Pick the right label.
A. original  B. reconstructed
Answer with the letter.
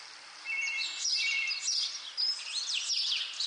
A